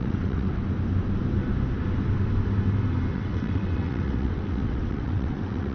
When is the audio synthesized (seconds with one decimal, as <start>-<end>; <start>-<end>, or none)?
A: 0.0-0.6; 3.1-5.7